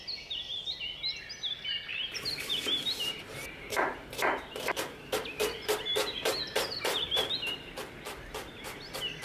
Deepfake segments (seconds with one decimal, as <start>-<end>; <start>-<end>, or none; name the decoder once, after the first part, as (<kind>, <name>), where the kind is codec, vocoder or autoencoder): 1.9-5.2 (vocoder, BigVGAN v2); 5.9-7.8